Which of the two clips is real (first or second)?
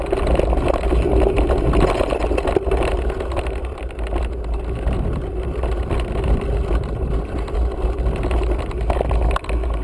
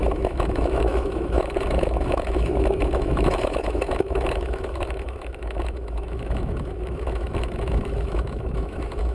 first